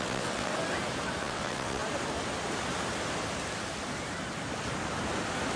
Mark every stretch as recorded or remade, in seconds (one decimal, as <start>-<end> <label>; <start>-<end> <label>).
0.0-0.5 remade; 0.5-1.2 recorded; 1.2-1.8 remade; 1.8-5.6 recorded